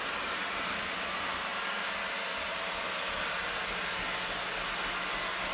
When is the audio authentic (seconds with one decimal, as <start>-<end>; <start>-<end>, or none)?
0.0-5.5